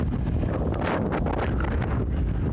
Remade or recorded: recorded